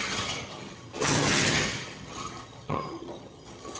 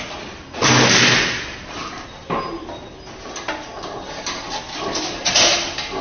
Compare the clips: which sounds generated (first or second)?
first